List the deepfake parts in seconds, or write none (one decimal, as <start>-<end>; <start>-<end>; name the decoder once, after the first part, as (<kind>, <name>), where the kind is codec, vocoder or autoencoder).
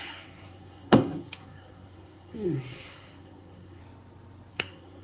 0.0-3.8 (codec, SNAC); 4.5-5.0